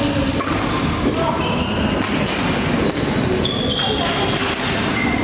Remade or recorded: recorded